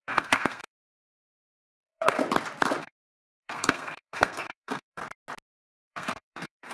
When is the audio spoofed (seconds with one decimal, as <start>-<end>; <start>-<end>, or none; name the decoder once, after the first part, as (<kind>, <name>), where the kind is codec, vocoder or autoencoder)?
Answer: 0.0-2.2 (codec, SNAC); 2.8-5.0; 5.8-6.7